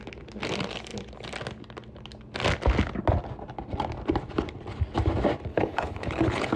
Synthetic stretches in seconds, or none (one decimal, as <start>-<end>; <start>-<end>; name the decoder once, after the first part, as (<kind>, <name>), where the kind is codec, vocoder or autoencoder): 5.5-6.6 (codec, HILCodec)